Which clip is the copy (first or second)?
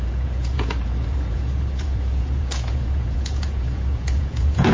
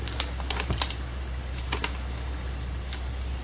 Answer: first